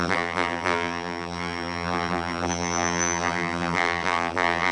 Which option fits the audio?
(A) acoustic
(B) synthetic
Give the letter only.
B